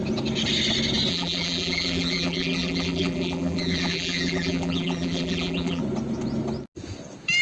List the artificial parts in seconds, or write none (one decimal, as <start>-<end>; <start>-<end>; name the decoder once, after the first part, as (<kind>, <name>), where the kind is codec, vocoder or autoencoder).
1.1-5.8 (vocoder, BigVGAN v2)